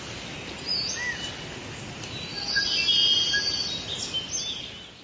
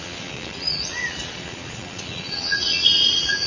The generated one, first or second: second